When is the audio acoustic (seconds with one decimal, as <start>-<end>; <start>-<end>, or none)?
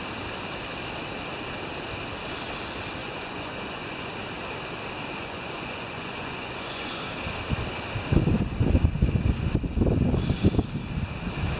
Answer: 0.0-3.0; 4.1-5.2; 7.0-11.6